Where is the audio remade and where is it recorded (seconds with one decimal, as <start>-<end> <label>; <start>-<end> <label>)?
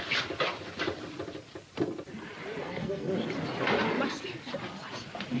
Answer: 0.0-2.6 recorded; 2.6-3.1 remade; 3.1-5.4 recorded